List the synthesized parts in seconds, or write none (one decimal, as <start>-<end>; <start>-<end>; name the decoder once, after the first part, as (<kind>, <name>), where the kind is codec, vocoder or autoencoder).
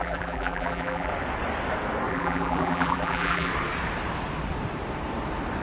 0.0-1.1 (vocoder, BigVGAN v2); 2.1-3.5